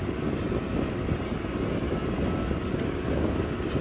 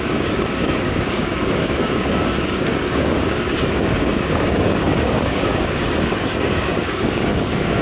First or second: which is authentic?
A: first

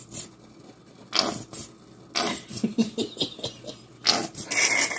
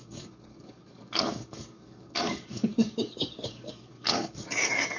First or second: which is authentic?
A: first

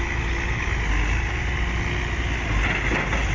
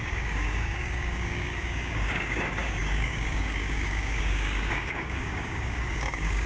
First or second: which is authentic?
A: first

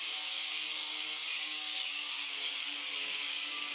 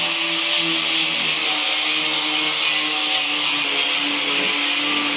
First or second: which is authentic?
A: second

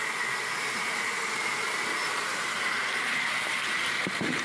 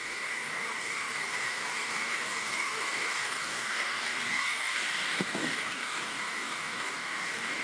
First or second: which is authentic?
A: first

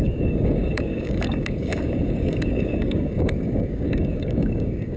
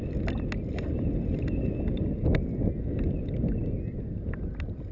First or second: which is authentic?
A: second